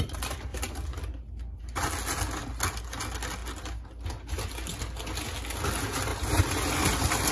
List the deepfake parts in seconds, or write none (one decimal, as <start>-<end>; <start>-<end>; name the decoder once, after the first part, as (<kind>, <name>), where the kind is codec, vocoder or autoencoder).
none